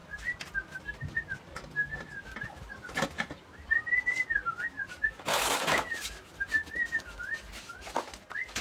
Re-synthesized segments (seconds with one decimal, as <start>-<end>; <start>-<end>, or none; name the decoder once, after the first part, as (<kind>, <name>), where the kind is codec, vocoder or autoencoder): 5.3-6.1 (autoencoder, DAC-VAE)